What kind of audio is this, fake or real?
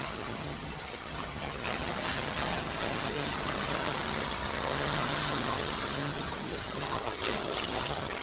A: fake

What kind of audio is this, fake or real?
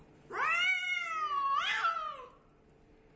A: real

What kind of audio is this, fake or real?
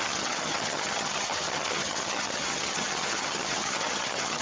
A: fake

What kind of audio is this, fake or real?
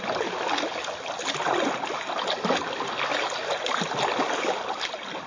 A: real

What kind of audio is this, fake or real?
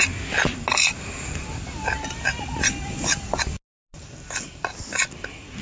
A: real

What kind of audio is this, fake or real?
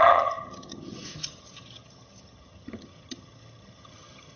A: fake